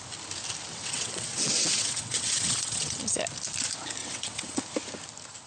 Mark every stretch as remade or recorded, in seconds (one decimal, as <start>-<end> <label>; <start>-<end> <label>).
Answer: 0.0-0.7 recorded; 0.7-3.0 remade; 3.0-4.0 recorded; 4.0-4.6 remade; 4.6-5.5 recorded